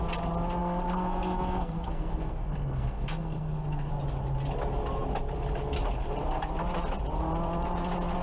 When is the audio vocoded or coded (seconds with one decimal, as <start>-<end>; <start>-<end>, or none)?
0.6-3.9

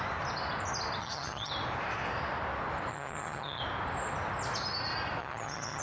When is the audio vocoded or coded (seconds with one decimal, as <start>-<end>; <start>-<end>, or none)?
1.0-1.5; 2.9-3.6; 5.2-5.8

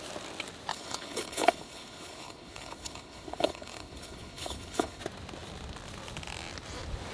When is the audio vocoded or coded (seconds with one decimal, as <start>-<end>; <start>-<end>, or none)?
0.7-5.0

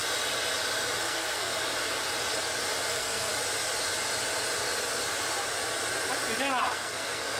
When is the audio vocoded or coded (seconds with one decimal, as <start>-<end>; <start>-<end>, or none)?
1.0-1.5; 2.9-3.3; 6.6-7.4

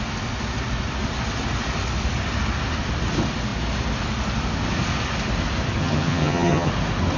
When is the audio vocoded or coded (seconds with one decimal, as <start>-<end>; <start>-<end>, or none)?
5.8-6.7

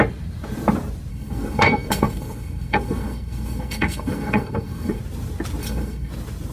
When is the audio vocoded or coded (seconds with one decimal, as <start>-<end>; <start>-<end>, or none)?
1.1-5.0; 5.6-6.1